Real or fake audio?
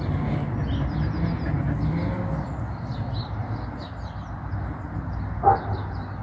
real